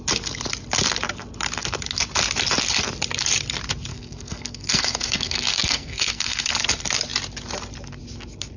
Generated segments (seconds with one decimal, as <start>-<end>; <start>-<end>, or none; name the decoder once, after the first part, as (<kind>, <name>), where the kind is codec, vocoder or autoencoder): 3.9-6.5 (codec, SNAC)